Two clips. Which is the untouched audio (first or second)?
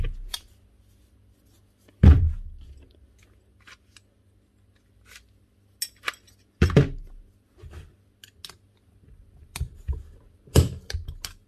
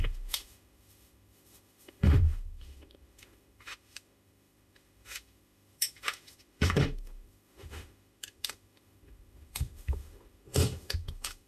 first